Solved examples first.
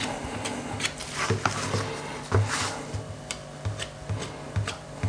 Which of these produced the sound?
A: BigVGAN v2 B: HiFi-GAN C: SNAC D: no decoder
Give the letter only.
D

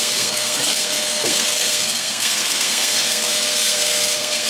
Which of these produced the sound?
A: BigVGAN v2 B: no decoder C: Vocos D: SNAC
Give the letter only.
D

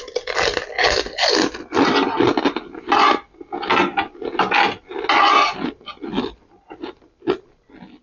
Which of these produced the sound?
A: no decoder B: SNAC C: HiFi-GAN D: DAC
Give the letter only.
A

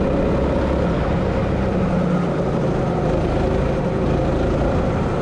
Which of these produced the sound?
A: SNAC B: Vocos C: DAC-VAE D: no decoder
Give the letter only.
D